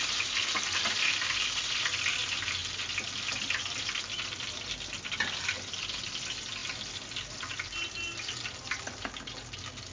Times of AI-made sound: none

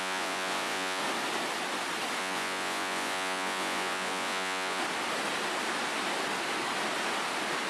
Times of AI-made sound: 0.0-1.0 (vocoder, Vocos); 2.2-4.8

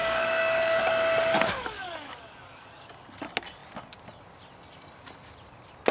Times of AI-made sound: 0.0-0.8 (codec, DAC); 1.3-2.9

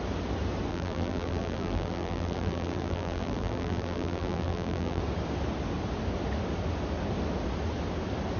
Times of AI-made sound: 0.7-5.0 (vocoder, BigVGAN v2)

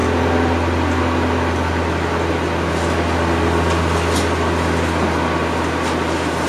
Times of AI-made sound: none